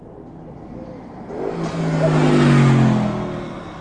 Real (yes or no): yes